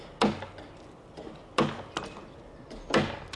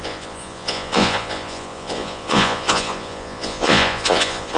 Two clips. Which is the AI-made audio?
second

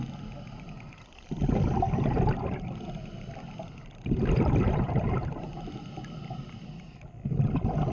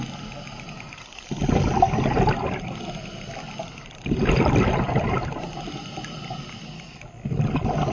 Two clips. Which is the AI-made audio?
first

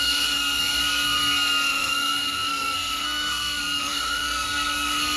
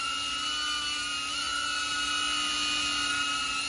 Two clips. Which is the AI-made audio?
first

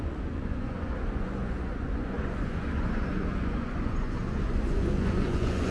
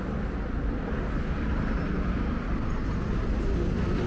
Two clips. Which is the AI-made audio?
first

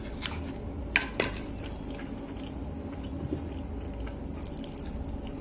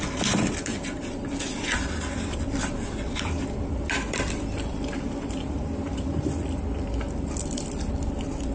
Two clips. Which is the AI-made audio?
second